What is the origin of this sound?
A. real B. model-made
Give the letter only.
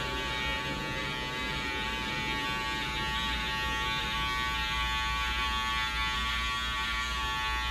A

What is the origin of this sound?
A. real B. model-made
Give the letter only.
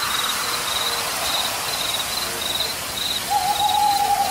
A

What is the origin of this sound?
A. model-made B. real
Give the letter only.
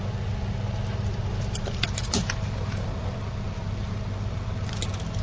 B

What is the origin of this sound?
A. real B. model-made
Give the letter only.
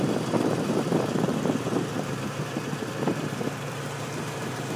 B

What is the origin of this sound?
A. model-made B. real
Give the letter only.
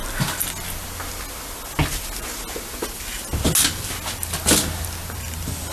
B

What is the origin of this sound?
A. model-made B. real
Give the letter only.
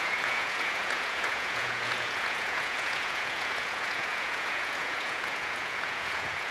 A